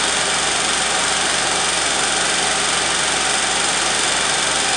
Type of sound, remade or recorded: recorded